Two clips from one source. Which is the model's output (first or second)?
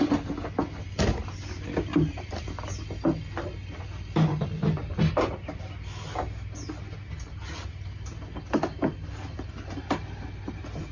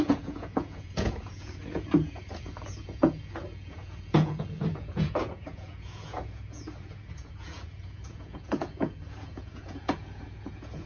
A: second